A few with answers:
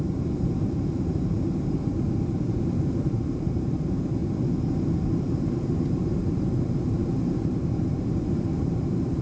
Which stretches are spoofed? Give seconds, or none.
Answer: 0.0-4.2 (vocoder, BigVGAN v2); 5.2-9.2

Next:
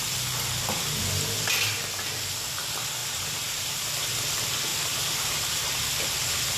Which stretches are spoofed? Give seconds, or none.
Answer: 3.0-3.9 (vocoder, BigVGAN v2); 4.7-5.8